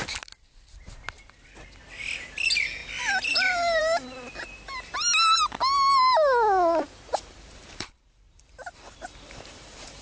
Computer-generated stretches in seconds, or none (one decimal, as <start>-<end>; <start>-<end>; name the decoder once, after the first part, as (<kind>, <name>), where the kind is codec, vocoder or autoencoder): 7.1-10.0 (vocoder, BigVGAN v2)